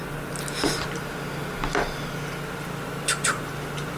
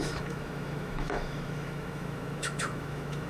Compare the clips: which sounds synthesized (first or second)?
second